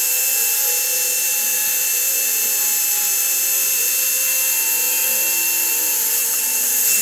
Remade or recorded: recorded